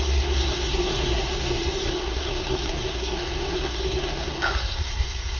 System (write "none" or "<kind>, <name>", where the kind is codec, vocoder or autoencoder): codec, SNAC